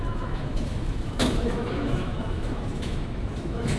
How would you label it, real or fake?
fake